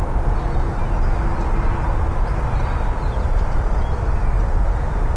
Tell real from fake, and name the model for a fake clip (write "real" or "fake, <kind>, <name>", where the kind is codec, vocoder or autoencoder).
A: real